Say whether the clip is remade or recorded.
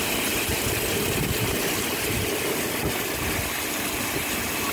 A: recorded